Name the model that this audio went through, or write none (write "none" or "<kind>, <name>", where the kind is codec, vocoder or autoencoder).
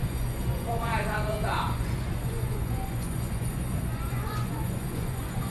vocoder, Vocos